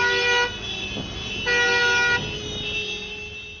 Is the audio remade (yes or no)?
no